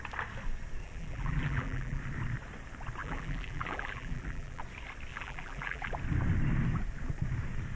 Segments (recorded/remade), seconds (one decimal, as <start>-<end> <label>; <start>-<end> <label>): 0.0-0.8 recorded; 0.8-2.0 remade; 2.0-3.0 recorded; 3.0-4.6 remade; 4.6-5.1 recorded; 5.1-5.9 remade; 5.9-7.8 recorded